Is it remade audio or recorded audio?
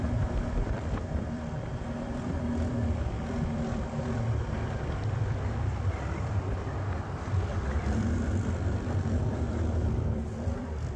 remade